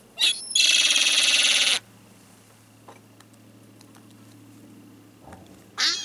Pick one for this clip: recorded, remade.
recorded